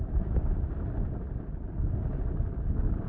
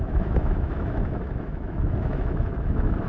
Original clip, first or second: first